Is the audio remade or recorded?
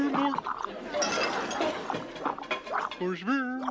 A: recorded